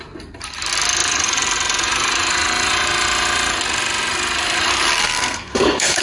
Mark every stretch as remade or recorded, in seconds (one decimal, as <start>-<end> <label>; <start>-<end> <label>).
0.0-5.0 recorded; 5.0-6.0 remade